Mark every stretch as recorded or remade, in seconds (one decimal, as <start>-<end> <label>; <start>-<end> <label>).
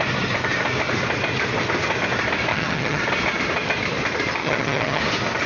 0.0-2.5 recorded; 2.5-3.0 remade; 3.0-4.4 recorded; 4.4-5.0 remade; 5.0-5.5 recorded